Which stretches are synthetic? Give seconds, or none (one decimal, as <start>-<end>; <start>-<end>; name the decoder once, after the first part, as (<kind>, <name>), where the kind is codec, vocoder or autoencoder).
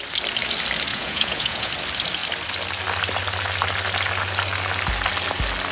0.9-1.7 (vocoder, Vocos)